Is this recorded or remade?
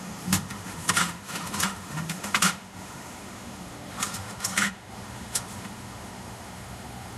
remade